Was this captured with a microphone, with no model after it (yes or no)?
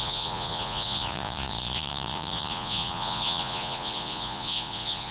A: no